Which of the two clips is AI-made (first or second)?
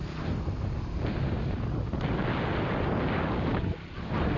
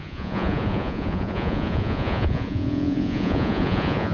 second